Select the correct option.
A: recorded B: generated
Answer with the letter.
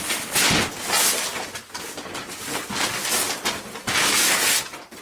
A